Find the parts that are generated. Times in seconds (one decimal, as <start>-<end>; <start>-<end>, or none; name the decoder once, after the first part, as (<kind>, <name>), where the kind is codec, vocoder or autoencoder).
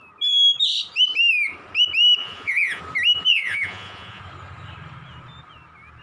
2.2-2.8 (vocoder, Vocos); 3.3-4.2